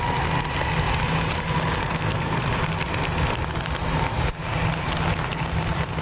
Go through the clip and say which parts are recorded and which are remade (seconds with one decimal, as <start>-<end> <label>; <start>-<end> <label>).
0.0-1.8 recorded; 1.8-2.4 remade; 2.4-6.0 recorded